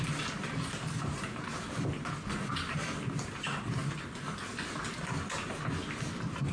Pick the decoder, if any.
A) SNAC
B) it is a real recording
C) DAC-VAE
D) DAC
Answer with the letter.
B